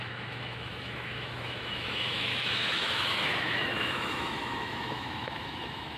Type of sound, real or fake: fake